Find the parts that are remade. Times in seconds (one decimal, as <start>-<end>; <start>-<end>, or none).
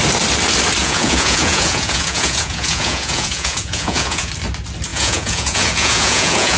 0.8-4.3; 4.9-6.6